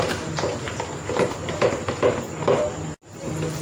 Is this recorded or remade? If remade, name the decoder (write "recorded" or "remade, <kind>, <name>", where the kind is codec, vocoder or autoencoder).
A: recorded